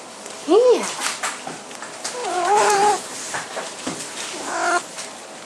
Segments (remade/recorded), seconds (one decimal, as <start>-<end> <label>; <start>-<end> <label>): 0.0-0.4 recorded; 0.4-1.0 remade; 1.0-2.2 recorded; 2.2-4.0 remade; 4.0-5.5 recorded